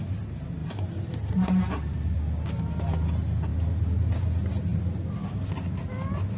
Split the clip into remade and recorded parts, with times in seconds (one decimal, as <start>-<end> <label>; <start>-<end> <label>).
0.0-0.6 recorded; 0.6-1.3 remade; 1.3-6.4 recorded